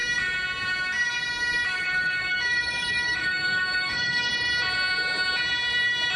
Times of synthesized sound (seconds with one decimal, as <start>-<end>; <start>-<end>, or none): 1.7-4.3